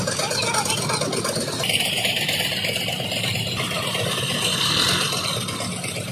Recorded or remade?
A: recorded